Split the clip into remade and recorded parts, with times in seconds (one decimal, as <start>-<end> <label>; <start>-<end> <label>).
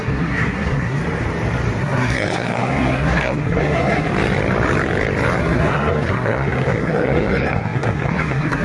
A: 0.0-1.0 remade; 1.0-1.8 recorded; 1.8-4.1 remade; 4.1-5.4 recorded; 5.4-8.6 remade